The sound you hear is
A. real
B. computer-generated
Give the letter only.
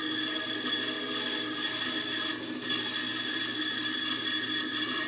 A